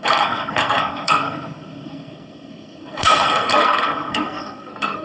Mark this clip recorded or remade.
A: remade